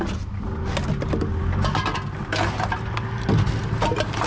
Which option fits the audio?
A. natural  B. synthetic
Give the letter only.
A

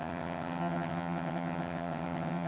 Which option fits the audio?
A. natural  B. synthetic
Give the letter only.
B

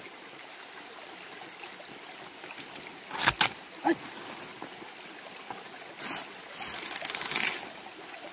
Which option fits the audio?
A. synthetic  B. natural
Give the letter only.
B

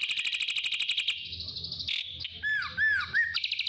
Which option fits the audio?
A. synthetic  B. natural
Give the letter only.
B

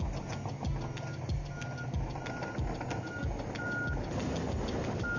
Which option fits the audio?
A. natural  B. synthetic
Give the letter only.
A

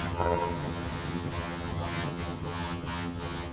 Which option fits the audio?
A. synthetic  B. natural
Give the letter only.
A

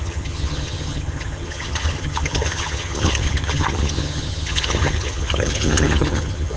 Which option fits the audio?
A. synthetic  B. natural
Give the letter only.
A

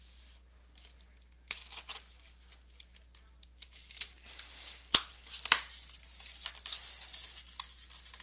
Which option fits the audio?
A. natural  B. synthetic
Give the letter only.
A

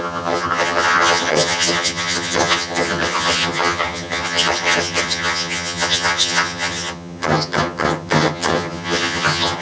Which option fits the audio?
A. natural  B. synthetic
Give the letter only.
B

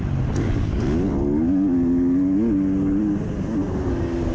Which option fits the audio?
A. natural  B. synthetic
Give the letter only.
A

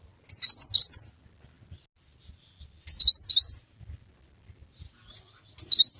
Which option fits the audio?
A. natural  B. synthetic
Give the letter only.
A